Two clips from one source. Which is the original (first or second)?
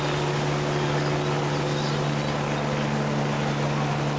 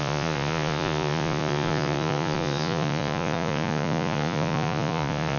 first